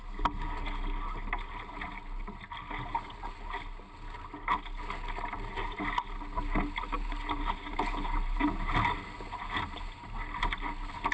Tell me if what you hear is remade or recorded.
recorded